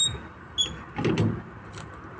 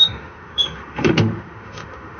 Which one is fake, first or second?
second